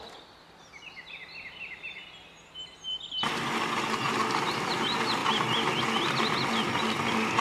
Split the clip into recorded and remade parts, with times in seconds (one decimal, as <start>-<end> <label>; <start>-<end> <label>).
0.0-7.4 recorded